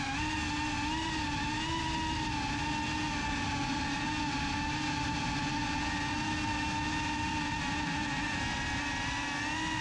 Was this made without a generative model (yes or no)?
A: yes